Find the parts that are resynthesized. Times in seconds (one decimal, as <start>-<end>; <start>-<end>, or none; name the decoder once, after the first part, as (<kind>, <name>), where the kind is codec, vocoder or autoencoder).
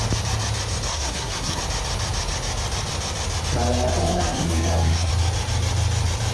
0.9-1.6 (codec, SNAC); 4.0-5.1